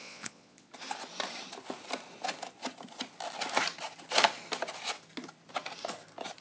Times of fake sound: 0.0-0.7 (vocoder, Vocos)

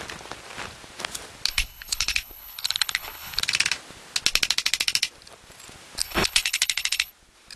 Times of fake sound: 1.5-3.4 (codec, HILCodec); 6.0-7.1